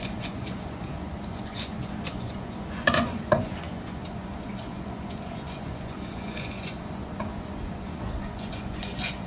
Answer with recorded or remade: remade